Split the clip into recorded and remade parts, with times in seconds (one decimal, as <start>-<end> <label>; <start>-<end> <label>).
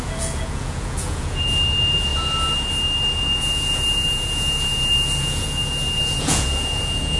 0.0-2.1 remade; 2.1-3.2 recorded; 3.2-7.2 remade